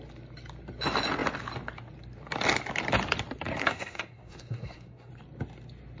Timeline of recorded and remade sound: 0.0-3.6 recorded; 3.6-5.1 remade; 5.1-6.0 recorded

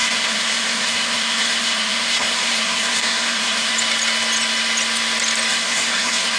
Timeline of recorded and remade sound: 0.0-3.7 remade; 3.7-5.5 recorded; 5.5-6.4 remade

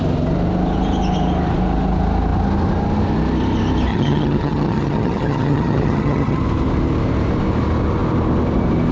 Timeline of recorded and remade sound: 0.0-3.9 recorded; 3.9-6.4 remade; 6.4-8.9 recorded

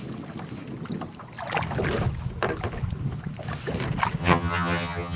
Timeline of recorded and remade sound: 0.0-4.2 recorded; 4.2-5.2 remade